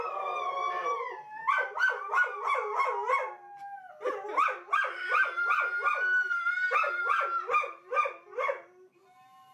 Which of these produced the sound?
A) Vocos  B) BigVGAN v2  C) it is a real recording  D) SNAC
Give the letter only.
C